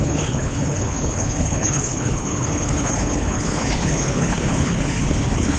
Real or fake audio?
fake